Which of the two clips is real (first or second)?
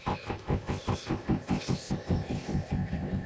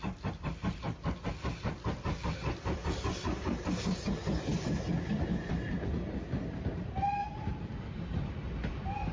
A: second